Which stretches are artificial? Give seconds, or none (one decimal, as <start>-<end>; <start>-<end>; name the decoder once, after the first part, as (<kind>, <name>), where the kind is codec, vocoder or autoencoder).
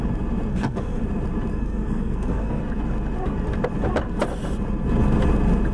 0.5-1.0 (codec, SNAC); 1.5-2.6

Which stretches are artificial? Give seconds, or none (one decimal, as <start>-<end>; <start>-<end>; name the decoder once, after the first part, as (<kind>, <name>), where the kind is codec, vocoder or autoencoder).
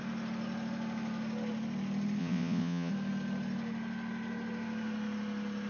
2.2-2.9 (vocoder, Vocos)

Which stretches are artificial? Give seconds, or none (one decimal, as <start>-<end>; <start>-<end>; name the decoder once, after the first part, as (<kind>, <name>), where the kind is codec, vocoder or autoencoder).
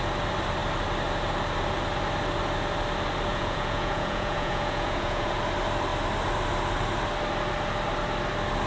3.3-5.3 (vocoder, Vocos)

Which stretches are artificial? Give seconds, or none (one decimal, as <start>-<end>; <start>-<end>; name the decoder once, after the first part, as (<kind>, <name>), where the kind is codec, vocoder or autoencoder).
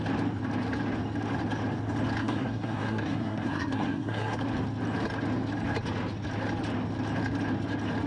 2.2-4.4 (codec, SNAC)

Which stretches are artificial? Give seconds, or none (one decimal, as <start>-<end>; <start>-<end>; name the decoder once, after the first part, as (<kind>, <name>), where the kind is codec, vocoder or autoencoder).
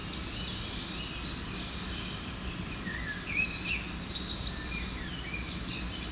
none